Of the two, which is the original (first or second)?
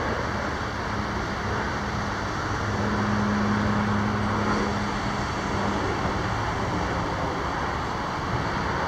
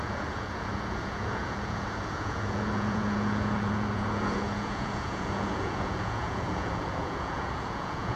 first